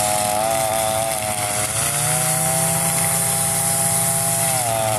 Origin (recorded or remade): recorded